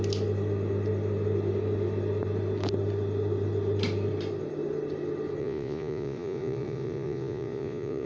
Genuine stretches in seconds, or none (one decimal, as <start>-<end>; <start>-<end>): 0.0-5.4